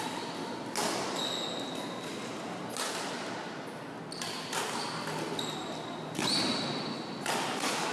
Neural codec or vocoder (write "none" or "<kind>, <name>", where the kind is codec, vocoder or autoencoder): none